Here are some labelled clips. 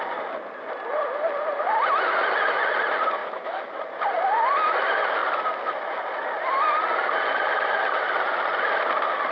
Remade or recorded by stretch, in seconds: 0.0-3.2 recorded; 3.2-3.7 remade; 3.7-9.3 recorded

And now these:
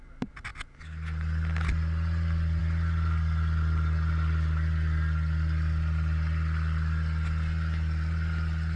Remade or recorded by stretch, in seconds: 0.0-8.8 recorded

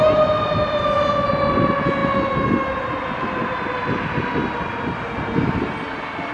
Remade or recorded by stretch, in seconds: 0.0-6.3 recorded

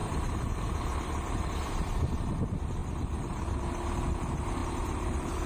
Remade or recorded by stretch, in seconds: 0.0-2.4 remade; 2.4-2.8 recorded; 2.8-3.6 remade; 3.6-4.6 recorded; 4.6-5.5 remade

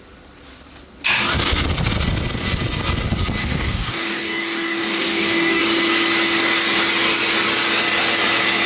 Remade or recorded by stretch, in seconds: 0.0-3.4 recorded; 3.4-5.6 remade; 5.6-8.7 recorded

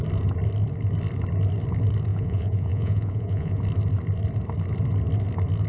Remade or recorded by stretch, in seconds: 0.0-2.1 recorded; 2.1-3.6 remade; 3.6-5.7 recorded